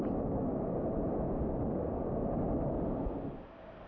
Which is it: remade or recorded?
recorded